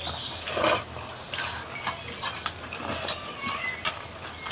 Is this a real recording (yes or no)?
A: yes